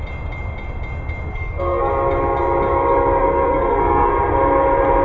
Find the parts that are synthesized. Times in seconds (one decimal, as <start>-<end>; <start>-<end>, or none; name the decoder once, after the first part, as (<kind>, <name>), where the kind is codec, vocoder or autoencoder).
1.3-1.9 (codec, SNAC); 3.2-4.1